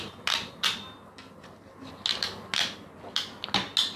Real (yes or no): yes